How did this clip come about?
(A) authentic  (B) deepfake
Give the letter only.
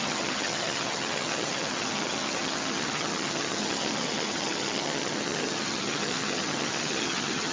B